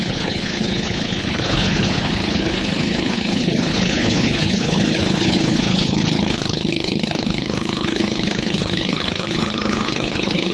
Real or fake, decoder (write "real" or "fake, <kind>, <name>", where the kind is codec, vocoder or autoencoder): fake, codec, HILCodec